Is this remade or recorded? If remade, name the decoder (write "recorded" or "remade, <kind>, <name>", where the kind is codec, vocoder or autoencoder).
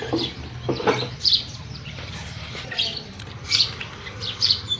remade, vocoder, BigVGAN v2